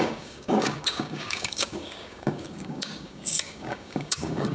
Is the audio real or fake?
fake